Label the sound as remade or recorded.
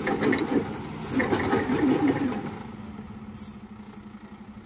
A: recorded